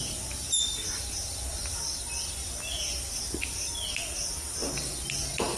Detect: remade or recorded recorded